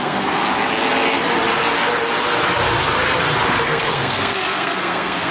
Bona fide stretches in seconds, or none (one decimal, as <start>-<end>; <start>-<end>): 0.4-3.6